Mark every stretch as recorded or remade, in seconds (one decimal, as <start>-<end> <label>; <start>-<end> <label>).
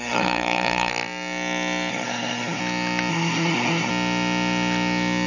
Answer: 0.0-0.9 remade; 0.9-1.9 recorded; 1.9-2.6 remade; 2.6-3.1 recorded; 3.1-3.9 remade; 3.9-5.3 recorded